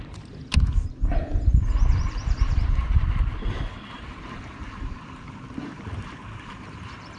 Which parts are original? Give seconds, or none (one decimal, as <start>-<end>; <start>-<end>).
0.0-7.2